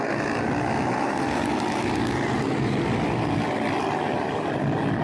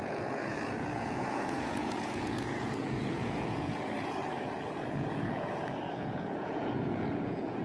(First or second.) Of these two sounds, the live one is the first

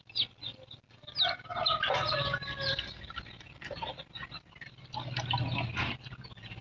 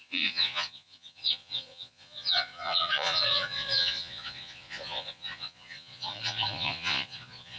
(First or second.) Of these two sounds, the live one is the first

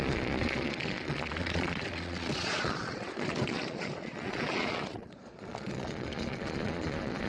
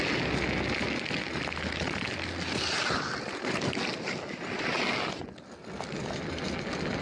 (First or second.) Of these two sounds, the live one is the second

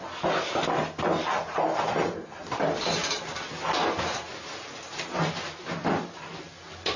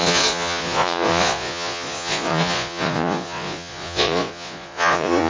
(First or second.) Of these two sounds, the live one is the first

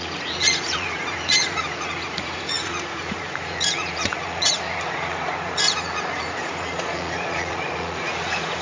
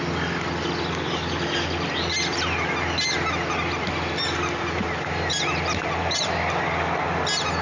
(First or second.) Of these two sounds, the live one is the second